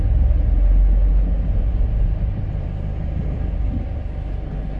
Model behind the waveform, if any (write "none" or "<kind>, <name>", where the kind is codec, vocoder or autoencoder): none